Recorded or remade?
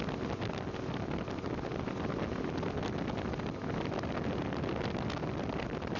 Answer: recorded